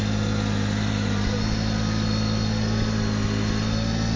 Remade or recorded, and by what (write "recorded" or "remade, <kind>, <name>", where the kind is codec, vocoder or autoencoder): recorded